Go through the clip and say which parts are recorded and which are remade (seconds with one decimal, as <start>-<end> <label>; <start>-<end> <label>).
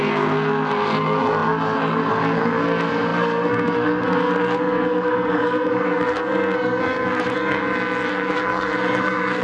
0.0-7.6 remade; 7.6-8.1 recorded; 8.1-9.4 remade